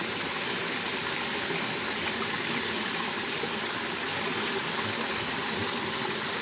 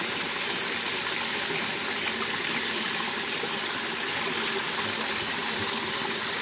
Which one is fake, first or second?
first